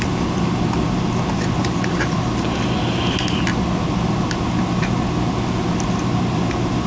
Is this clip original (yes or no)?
yes